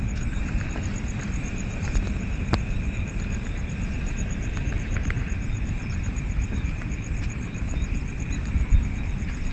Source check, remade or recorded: remade